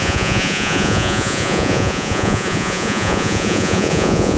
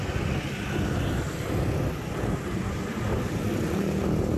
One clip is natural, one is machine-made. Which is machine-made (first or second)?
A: first